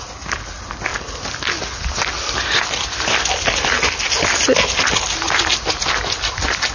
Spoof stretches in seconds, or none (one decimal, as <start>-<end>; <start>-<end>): none